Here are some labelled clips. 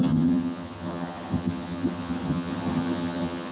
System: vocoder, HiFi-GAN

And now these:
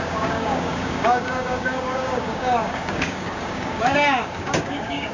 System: codec, DAC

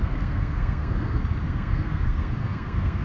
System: codec, SNAC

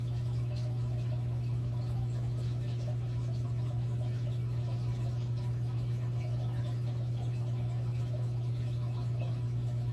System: autoencoder, DAC-VAE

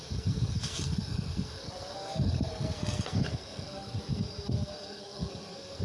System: codec, SNAC